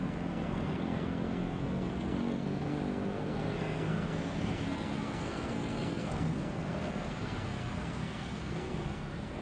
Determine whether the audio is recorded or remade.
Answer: remade